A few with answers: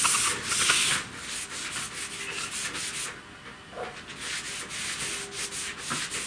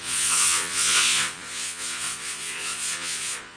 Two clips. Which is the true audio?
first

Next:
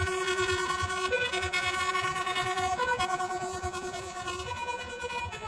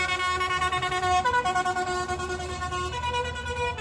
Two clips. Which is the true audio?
second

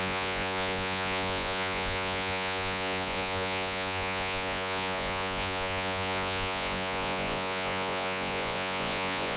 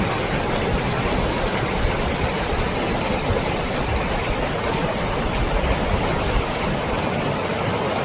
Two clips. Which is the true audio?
second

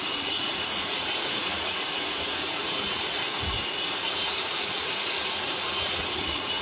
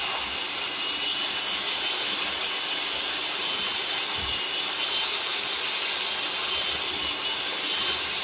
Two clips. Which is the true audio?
second